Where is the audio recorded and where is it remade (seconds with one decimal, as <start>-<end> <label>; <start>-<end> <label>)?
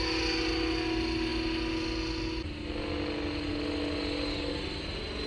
0.0-5.3 recorded